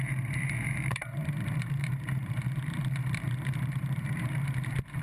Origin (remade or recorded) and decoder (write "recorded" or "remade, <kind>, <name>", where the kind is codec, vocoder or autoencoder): remade, vocoder, BigVGAN v2